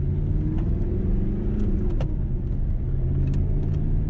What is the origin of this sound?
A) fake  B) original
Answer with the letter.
B